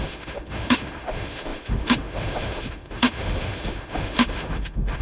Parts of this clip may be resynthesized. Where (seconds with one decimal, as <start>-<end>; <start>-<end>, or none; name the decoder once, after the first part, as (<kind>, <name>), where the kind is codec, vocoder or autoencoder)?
0.0-5.0 (autoencoder, DAC-VAE)